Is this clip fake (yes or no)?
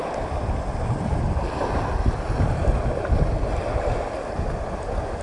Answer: no